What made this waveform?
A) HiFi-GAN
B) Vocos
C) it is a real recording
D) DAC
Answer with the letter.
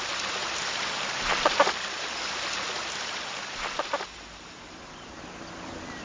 C